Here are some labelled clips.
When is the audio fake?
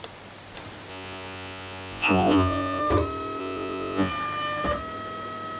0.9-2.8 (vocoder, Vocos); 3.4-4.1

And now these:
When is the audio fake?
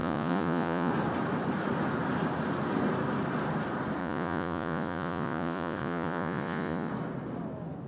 0.0-0.9 (vocoder, Vocos); 4.0-6.9